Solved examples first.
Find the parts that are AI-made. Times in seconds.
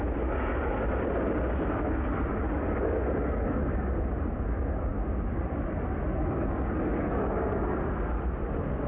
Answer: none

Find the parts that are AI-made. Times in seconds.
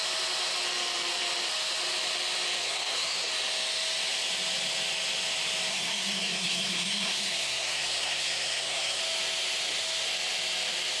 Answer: 2.6-3.3; 5.7-9.0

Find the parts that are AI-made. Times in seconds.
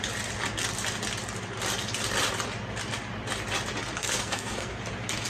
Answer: 4.0-4.8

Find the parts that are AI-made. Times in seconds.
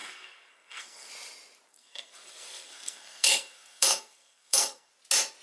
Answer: 0.0-1.1; 1.7-4.9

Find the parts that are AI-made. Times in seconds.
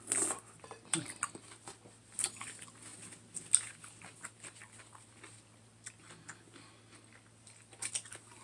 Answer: none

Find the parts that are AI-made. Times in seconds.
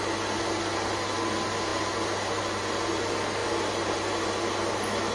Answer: none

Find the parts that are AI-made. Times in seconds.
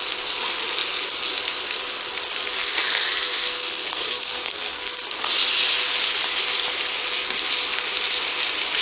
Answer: 2.6-5.3